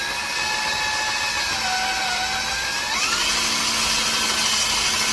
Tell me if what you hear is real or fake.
real